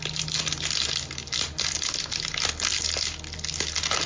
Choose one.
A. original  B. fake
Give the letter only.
A